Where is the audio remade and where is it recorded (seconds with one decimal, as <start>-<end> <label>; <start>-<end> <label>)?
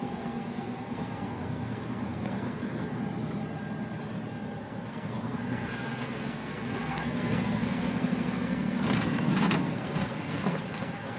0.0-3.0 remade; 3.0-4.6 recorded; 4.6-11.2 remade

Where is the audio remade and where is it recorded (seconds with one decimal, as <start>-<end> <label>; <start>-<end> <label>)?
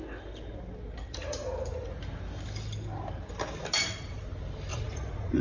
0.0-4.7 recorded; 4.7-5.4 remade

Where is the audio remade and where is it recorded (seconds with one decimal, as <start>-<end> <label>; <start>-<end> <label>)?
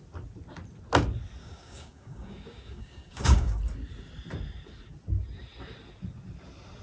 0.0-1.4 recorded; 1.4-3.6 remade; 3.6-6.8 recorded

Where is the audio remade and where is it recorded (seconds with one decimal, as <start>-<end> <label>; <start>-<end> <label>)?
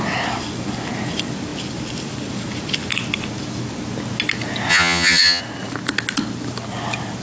0.0-4.7 recorded; 4.7-5.4 remade; 5.4-7.2 recorded